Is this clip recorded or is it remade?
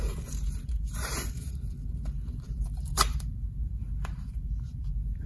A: remade